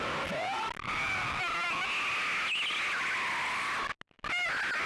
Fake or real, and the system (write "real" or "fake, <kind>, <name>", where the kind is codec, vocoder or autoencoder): real